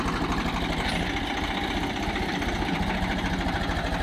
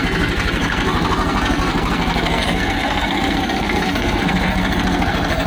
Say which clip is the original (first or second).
first